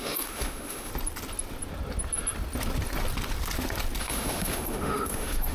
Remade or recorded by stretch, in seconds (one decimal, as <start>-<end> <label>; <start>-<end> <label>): 0.0-0.9 remade; 0.9-4.0 recorded; 4.0-5.5 remade